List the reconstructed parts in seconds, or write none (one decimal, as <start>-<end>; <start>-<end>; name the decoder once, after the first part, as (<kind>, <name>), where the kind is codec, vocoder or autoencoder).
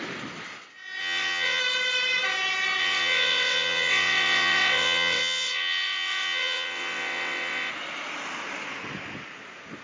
1.0-1.6 (vocoder, WaveNeXt); 2.8-7.7